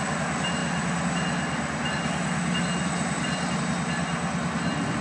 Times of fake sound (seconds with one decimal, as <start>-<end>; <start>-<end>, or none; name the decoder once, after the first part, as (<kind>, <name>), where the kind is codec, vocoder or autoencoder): none